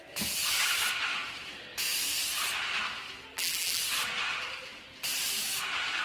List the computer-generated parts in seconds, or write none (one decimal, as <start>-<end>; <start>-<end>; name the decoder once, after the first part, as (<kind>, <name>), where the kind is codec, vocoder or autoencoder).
3.3-3.8 (vocoder, BigVGAN v2)